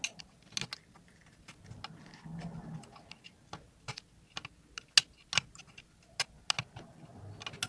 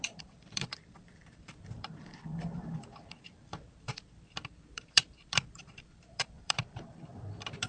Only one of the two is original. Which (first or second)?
first